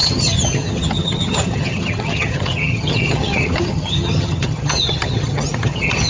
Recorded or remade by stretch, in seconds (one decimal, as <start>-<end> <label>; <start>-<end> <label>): 0.0-6.1 remade